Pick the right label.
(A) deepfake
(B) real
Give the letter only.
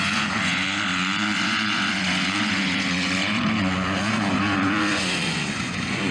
A